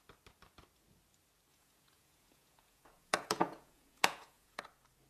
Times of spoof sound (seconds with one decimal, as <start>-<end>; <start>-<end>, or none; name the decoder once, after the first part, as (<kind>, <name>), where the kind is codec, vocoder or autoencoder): 1.5-4.6 (vocoder, Vocos)